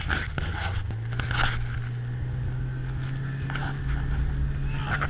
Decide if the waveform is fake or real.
real